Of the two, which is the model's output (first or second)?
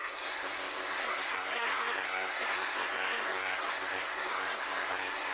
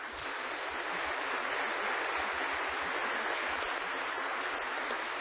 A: first